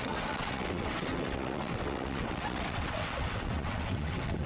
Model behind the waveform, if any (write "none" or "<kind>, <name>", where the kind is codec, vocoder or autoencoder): vocoder, WaveNeXt